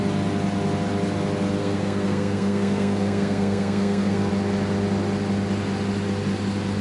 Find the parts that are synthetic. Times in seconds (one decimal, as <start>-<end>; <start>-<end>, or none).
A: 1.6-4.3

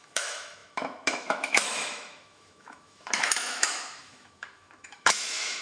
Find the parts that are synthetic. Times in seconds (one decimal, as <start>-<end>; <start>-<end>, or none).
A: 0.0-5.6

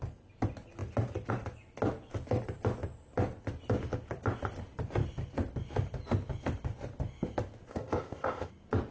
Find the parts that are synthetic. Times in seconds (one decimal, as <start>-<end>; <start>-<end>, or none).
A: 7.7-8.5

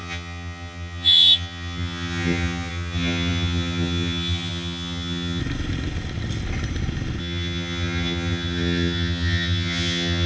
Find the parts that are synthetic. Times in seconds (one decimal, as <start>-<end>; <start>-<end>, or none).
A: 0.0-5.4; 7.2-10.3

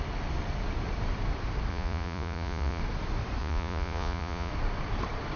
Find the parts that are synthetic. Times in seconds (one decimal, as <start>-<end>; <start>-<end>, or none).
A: 1.7-2.8; 3.4-4.5